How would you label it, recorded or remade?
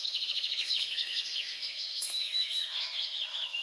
remade